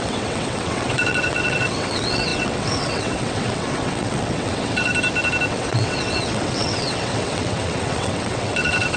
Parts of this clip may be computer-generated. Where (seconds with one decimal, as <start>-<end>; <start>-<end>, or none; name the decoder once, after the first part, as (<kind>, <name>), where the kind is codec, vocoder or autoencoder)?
0.0-4.9 (vocoder, WaveNeXt); 5.5-9.0